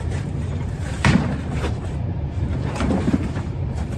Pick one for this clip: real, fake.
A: fake